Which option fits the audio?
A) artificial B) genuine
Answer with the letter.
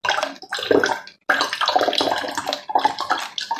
B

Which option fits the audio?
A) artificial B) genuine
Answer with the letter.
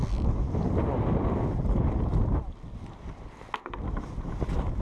B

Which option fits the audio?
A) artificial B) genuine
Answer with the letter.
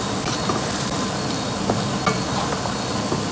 B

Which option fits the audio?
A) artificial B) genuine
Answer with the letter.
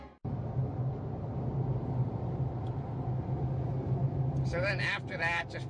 B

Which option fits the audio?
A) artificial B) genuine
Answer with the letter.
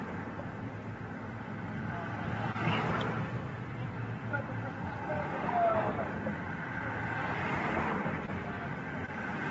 A